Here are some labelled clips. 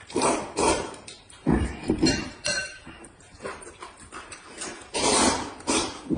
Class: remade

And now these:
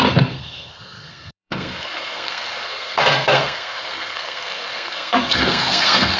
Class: remade